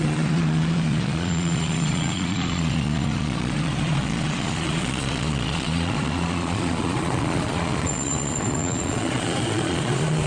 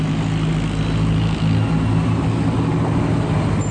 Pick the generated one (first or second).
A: first